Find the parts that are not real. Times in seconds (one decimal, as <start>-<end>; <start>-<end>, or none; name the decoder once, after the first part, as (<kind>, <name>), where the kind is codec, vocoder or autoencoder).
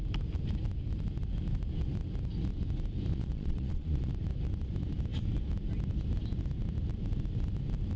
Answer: 3.1-4.1 (vocoder, Vocos)